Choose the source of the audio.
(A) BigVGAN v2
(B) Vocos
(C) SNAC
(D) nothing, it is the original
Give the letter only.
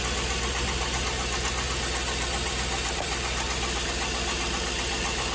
D